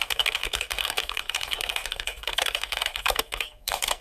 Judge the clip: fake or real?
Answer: fake